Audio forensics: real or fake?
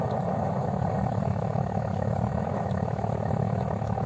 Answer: fake